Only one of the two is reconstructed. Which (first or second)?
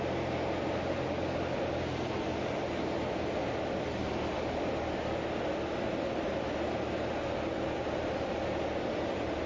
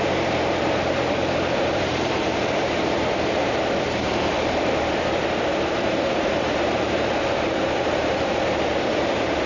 second